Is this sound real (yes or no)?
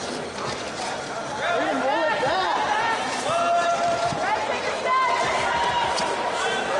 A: no